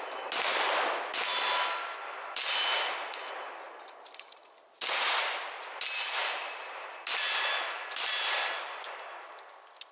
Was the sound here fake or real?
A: real